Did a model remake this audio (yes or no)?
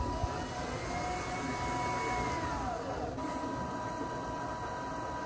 no